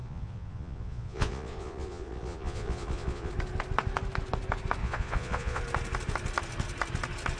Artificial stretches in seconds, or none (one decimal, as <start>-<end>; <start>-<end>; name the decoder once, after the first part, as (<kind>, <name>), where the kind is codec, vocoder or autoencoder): 0.0-3.3 (vocoder, Vocos); 4.8-5.6